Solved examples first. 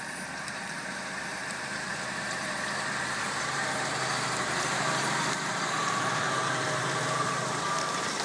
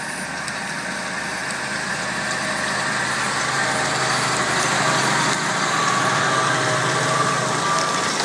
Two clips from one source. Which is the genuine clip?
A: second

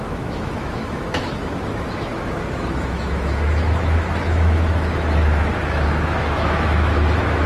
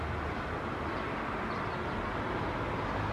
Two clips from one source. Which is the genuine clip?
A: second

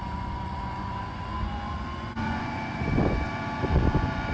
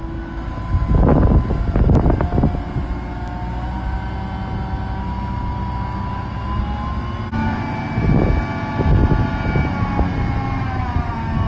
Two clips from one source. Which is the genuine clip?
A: second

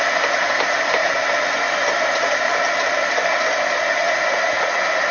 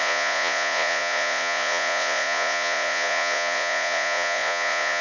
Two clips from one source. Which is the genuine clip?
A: first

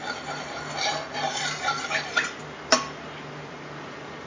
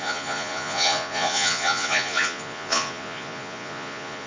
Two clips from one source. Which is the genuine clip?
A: first